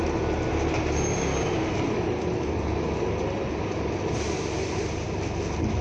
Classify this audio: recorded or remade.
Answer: recorded